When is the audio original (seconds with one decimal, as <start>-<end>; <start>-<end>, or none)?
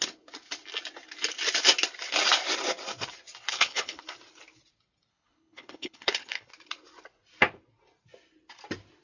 0.0-3.5; 4.0-5.1; 6.5-9.0